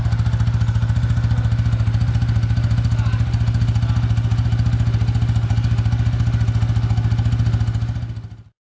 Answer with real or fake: real